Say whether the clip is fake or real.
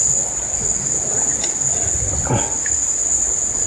real